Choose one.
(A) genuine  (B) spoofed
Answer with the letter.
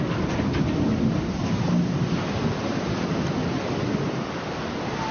A